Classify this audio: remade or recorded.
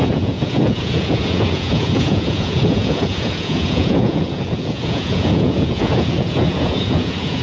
remade